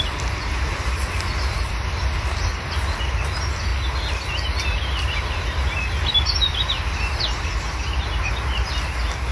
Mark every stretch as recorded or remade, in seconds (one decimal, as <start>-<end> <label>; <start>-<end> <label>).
0.0-1.0 recorded; 1.0-2.4 remade; 2.4-9.3 recorded